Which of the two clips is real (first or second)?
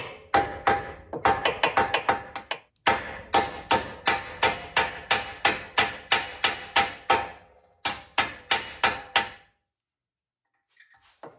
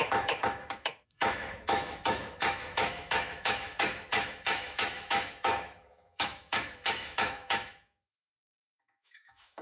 first